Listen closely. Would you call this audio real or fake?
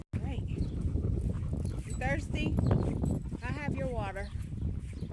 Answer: real